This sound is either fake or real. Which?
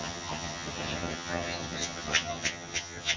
fake